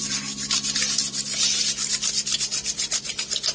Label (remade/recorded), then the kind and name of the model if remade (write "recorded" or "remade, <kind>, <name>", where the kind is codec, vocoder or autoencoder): recorded